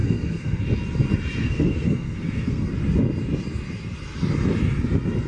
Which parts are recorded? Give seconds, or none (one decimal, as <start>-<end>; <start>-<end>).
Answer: 0.6-1.4; 2.7-5.3